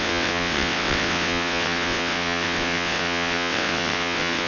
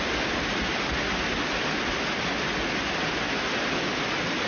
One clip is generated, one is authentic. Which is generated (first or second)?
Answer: first